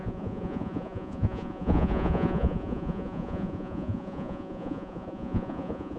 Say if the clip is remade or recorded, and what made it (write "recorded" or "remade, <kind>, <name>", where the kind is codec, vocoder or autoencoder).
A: remade, vocoder, Vocos